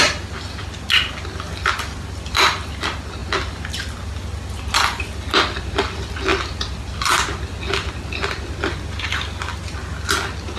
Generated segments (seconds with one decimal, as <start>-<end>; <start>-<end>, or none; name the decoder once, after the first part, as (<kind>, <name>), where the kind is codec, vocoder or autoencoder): none